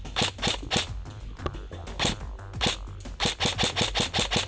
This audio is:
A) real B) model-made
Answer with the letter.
A